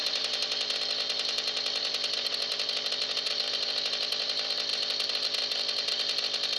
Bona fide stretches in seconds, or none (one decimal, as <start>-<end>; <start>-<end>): none